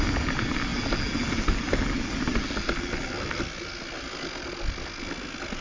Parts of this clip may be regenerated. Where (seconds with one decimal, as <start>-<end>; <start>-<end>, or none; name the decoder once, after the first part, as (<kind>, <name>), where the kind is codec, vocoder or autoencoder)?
none